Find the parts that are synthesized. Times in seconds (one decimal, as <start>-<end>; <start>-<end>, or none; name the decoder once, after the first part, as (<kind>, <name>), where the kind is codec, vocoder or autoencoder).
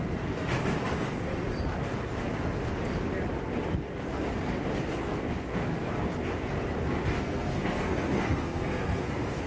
0.0-0.5 (codec, SNAC); 5.0-5.7; 7.2-9.5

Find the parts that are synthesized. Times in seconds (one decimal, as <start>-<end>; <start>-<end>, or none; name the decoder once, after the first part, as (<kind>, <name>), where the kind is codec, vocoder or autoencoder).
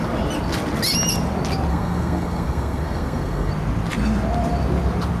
1.7-3.5 (codec, SNAC)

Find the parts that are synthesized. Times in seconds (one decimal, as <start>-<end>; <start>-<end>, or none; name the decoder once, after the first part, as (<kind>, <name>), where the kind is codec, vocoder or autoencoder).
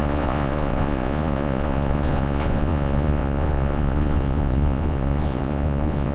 0.0-6.1 (vocoder, Vocos)